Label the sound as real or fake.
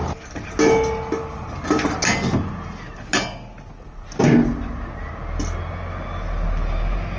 real